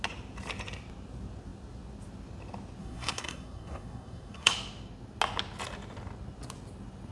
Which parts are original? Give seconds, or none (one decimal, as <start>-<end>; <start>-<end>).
0.0-2.8; 4.5-7.1